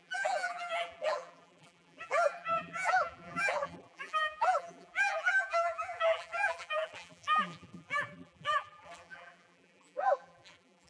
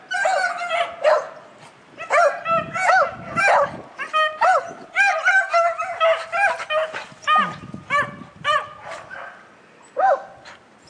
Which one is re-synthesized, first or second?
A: first